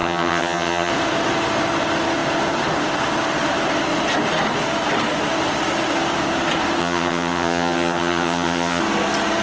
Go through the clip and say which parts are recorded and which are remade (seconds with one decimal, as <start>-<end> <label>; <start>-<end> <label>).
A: 0.0-0.9 remade; 0.9-6.8 recorded; 6.8-8.8 remade; 8.8-9.4 recorded